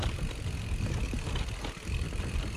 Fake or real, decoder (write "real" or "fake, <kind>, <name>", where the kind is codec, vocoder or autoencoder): real